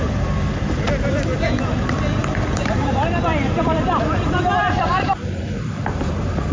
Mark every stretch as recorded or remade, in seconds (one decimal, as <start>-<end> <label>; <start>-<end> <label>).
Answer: 0.0-2.2 recorded; 2.2-6.1 remade; 6.1-6.5 recorded